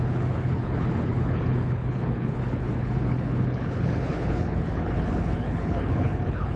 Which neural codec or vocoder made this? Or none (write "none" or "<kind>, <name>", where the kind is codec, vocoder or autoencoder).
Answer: codec, HILCodec